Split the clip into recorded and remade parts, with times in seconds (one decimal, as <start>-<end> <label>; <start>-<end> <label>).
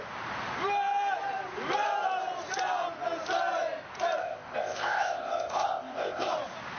0.0-4.2 recorded; 4.2-6.3 remade; 6.3-6.8 recorded